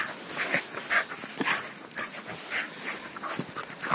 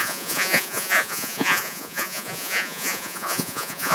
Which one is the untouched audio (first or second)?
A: first